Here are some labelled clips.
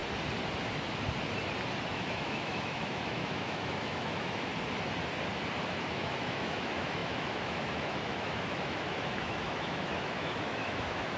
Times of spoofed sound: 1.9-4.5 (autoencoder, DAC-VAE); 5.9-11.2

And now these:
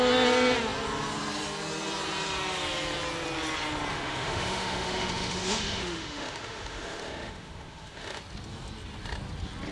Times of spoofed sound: 3.9-8.2 (autoencoder, DAC-VAE)

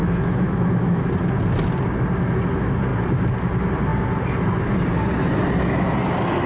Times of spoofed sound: 0.0-1.1 (autoencoder, DAC-VAE)

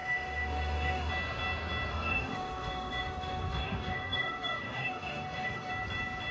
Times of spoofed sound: 0.0-1.1 (autoencoder, DAC-VAE); 1.9-5.7

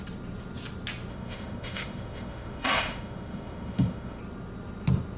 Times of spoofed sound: 1.1-4.2 (autoencoder, DAC-VAE)

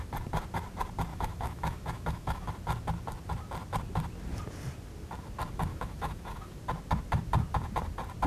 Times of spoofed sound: 1.1-2.5 (autoencoder, DAC-VAE); 5.7-6.6